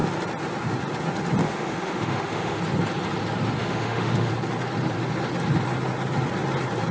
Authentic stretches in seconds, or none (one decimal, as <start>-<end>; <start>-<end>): 0.0-1.4; 2.6-3.6; 4.3-6.9